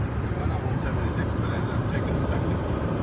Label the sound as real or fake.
fake